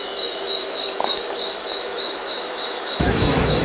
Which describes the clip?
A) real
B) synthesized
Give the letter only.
B